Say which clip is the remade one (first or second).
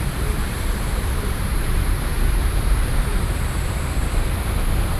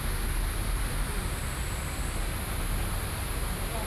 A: first